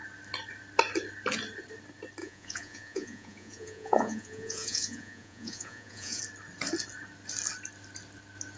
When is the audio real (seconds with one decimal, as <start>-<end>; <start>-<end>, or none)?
0.0-2.2; 6.2-8.6